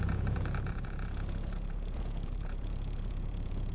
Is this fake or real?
fake